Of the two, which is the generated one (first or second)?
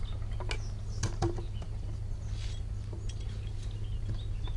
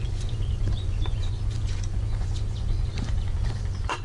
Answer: second